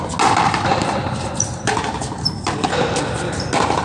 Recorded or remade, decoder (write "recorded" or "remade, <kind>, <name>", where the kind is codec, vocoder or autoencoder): recorded